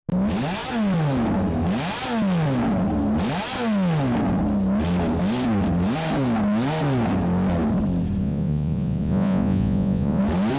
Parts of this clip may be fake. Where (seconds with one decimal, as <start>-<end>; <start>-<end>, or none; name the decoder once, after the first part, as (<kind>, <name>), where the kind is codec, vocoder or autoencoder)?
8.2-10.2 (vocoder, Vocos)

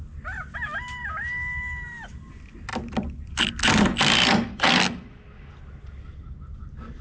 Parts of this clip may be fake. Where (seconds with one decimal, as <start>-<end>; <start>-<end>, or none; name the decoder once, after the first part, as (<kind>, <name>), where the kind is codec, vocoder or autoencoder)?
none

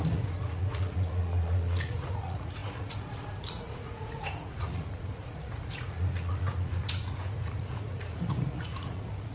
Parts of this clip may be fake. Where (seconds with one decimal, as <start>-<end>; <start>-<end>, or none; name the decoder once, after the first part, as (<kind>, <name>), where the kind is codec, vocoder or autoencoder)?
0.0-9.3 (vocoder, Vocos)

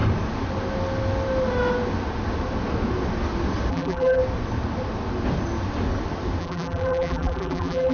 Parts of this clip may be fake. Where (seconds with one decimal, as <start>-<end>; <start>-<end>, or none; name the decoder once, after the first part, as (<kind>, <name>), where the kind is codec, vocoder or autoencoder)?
3.7-4.2 (vocoder, BigVGAN v2); 6.4-7.9

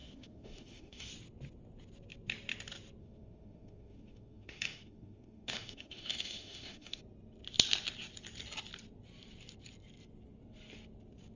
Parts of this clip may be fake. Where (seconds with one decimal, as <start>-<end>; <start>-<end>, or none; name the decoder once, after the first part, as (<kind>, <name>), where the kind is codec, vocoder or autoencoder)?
0.0-1.1 (autoencoder, DAC-VAE); 3.0-7.0